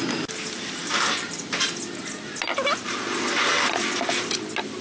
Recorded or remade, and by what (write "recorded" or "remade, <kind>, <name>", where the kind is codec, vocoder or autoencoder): recorded